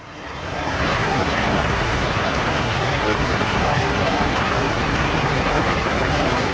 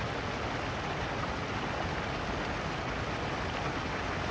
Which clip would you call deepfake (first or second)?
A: first